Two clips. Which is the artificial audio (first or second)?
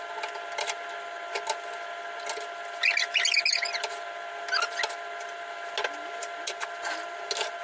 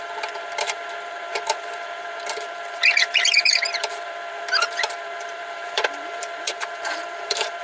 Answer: second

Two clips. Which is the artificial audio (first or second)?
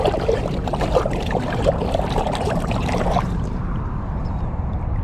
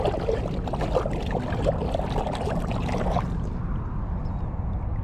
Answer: first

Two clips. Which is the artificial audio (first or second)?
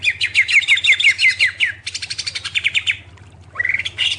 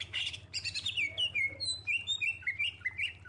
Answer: second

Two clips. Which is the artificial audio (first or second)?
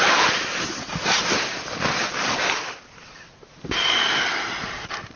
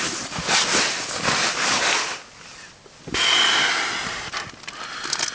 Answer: first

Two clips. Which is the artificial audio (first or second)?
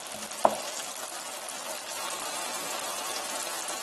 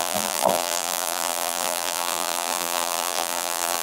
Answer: second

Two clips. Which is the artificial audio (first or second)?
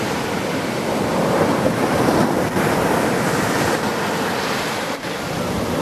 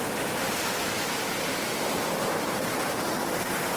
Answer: first